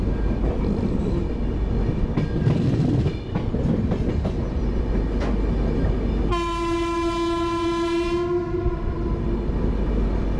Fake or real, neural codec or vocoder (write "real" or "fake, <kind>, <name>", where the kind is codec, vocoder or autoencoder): real